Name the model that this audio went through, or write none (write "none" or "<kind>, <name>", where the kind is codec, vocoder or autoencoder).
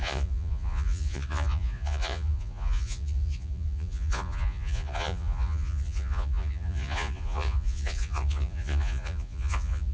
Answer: vocoder, Vocos